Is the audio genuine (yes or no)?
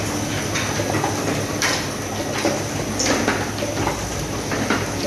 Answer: yes